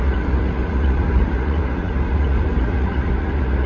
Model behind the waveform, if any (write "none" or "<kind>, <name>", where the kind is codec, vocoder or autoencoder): vocoder, Vocos